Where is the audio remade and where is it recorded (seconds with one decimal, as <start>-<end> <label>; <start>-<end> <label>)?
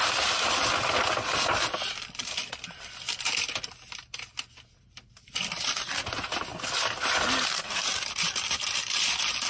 0.0-9.5 recorded